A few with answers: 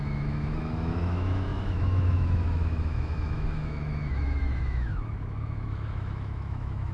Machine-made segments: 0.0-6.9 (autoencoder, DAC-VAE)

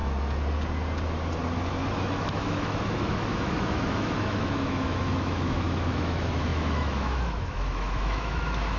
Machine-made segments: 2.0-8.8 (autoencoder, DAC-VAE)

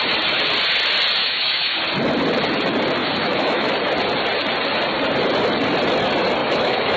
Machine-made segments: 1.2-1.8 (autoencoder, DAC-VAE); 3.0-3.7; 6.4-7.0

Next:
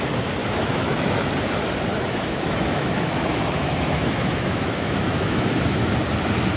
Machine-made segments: 0.4-1.3 (autoencoder, DAC-VAE); 1.9-5.9

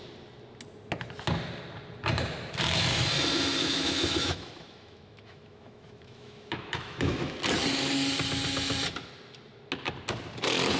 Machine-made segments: 3.6-7.4 (autoencoder, DAC-VAE)

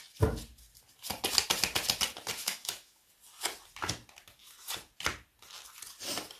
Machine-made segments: 2.4-3.1 (autoencoder, DAC-VAE)